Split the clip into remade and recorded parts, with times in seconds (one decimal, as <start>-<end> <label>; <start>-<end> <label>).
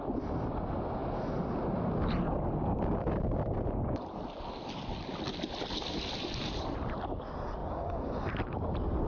0.0-7.6 recorded; 7.6-8.2 remade; 8.2-9.1 recorded